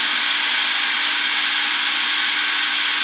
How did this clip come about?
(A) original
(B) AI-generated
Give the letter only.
A